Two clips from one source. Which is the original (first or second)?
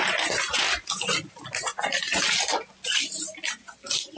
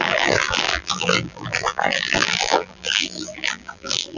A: first